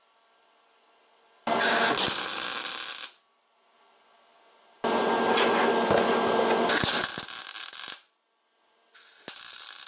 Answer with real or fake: real